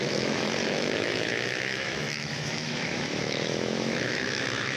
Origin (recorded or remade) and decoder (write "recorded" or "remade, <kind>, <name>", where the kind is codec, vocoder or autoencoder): remade, autoencoder, DAC-VAE